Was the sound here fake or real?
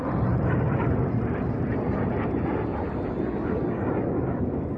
real